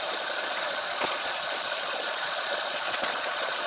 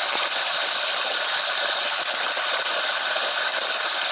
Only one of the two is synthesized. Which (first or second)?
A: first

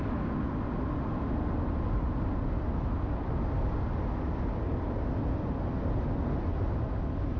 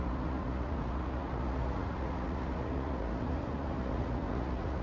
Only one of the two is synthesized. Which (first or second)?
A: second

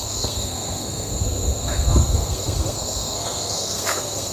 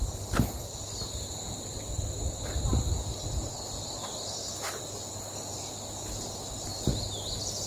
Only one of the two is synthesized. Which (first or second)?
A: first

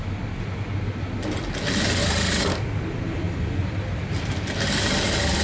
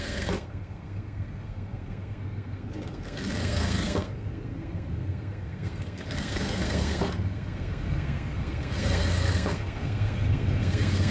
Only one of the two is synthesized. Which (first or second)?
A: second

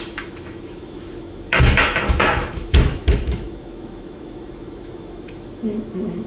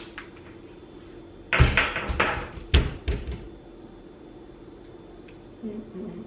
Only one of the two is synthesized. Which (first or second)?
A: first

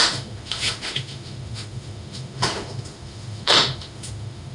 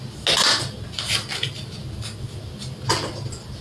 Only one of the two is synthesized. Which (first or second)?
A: first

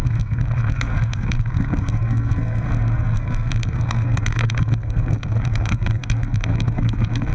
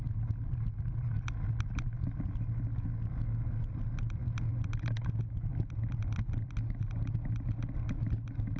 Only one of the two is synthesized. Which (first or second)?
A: first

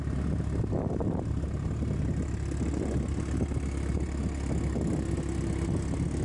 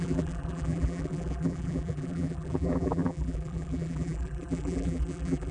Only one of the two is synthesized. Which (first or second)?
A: second